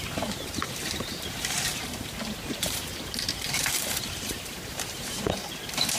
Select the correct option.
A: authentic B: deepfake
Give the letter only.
B